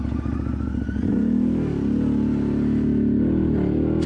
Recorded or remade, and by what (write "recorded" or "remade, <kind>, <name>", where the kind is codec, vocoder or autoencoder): recorded